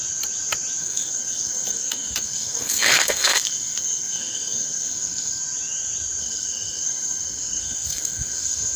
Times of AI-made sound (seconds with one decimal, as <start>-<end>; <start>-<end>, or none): 0.8-5.4; 6.2-8.8

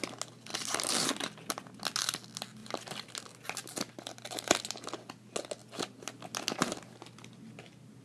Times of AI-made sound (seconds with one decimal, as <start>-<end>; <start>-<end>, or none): none

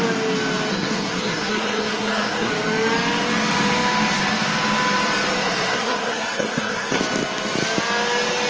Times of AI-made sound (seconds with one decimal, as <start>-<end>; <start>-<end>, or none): 0.7-2.5; 5.4-7.0

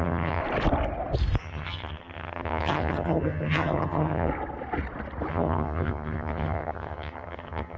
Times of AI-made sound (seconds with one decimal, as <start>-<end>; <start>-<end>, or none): 0.0-0.4; 1.4-4.3; 5.3-7.8